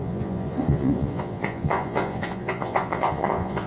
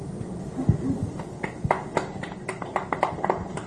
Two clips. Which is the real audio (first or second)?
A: second